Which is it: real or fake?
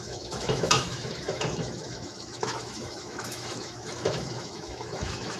fake